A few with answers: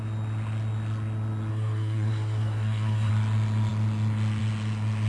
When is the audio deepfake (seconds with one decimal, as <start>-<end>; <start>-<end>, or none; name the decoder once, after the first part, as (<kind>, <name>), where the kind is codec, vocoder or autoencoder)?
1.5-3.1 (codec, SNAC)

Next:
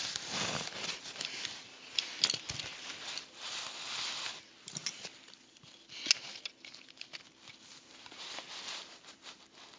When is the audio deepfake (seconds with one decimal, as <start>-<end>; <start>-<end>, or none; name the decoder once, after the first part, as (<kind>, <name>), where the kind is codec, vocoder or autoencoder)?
none

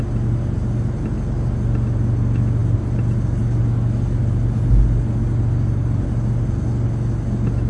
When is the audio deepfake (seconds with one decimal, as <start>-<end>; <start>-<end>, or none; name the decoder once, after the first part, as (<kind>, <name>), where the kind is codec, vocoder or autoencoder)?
none

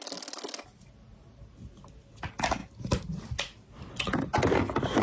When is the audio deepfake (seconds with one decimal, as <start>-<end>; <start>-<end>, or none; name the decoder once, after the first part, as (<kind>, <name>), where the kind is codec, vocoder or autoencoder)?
none

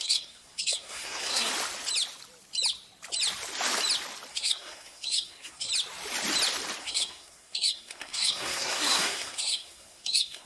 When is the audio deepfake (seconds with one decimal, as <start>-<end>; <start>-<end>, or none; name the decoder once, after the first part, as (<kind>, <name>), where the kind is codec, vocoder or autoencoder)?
0.0-1.5 (codec, SNAC); 4.3-5.7; 6.8-10.5

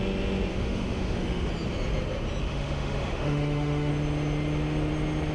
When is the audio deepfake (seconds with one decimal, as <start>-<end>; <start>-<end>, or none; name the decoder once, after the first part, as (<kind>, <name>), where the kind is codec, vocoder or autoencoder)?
0.5-1.5 (autoencoder, DAC-VAE); 2.4-3.9

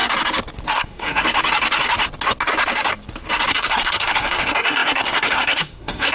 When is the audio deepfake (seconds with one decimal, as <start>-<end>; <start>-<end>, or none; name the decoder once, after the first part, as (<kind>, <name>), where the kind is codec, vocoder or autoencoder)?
0.7-1.2 (codec, SNAC); 3.5-6.1